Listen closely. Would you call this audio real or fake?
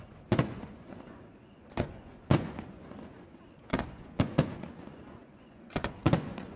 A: fake